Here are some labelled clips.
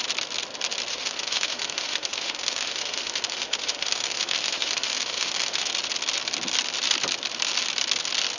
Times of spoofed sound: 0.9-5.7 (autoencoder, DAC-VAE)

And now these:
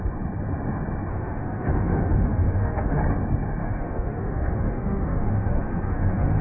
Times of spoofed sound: 1.1-3.0 (autoencoder, DAC-VAE); 3.6-6.4

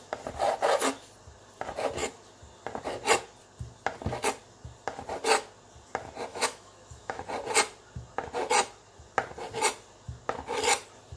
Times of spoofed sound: 6.3-7.2 (autoencoder, DAC-VAE)

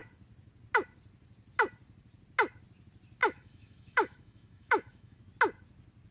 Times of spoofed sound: 3.2-5.2 (autoencoder, DAC-VAE)

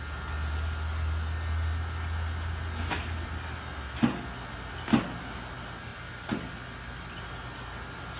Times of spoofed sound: none